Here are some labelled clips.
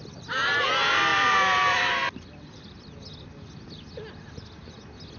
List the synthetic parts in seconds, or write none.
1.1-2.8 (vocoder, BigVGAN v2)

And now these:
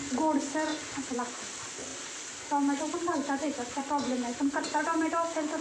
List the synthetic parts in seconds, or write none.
0.7-1.4 (vocoder, BigVGAN v2); 1.9-3.8; 4.3-5.0

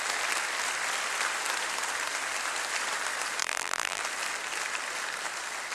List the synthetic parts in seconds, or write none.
3.4-4.0 (vocoder, BigVGAN v2)